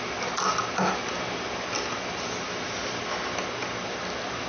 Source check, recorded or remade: recorded